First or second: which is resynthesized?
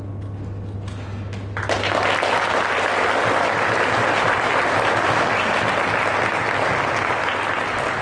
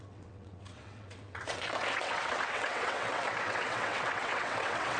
second